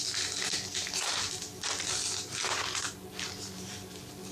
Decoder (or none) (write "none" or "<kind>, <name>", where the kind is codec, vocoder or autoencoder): none